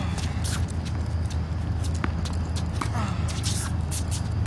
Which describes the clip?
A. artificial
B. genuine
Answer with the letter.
B